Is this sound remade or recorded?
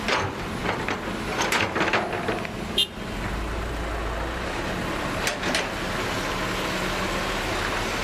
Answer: recorded